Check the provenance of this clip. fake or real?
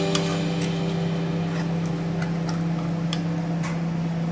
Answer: real